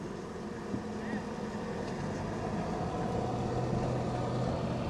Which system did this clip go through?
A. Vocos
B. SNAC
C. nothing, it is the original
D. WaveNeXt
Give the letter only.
C